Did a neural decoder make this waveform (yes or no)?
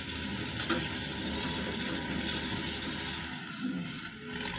no